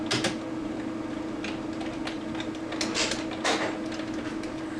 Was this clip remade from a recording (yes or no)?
no